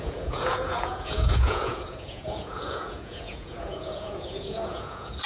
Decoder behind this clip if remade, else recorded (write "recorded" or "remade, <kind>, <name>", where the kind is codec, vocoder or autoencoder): remade, vocoder, Vocos